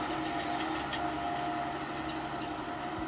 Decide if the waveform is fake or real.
real